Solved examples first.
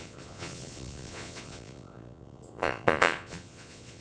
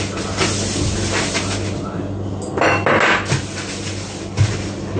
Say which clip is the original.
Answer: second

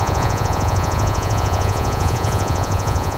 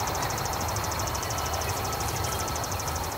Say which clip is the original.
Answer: second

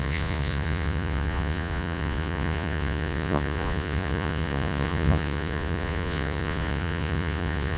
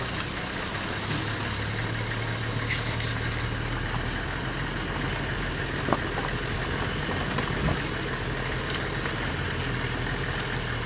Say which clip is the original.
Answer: second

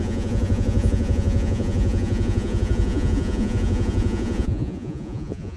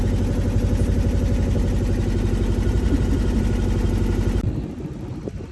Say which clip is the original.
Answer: second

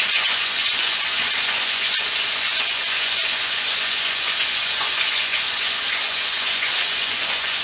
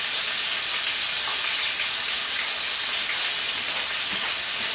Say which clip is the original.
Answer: second